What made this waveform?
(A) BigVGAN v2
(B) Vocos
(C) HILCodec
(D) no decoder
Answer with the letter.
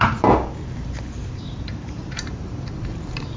A